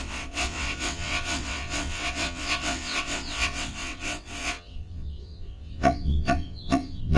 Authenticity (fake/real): fake